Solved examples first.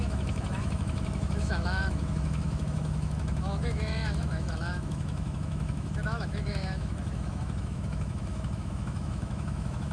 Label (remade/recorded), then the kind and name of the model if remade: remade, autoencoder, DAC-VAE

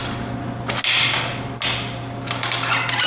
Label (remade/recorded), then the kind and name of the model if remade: recorded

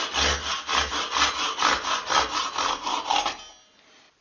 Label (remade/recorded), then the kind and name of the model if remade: recorded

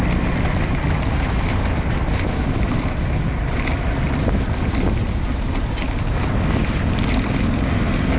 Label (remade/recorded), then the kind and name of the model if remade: recorded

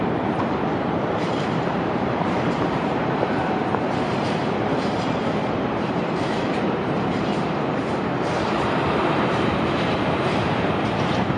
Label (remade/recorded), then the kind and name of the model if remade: remade, vocoder, BigVGAN v2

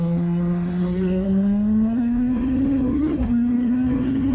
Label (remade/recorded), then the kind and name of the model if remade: remade, codec, SNAC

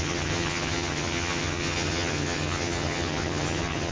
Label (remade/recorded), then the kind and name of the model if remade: remade, vocoder, HiFi-GAN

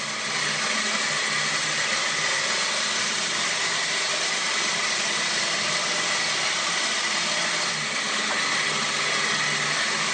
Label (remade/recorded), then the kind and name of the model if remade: recorded